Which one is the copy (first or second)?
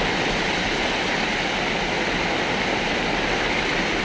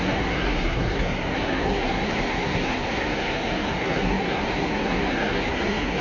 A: second